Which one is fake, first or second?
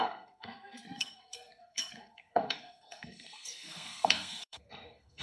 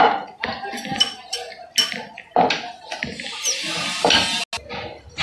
first